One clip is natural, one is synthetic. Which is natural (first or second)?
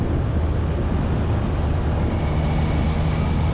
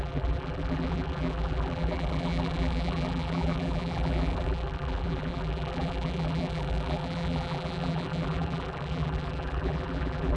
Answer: first